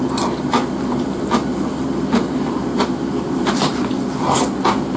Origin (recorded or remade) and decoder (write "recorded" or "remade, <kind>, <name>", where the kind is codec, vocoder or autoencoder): recorded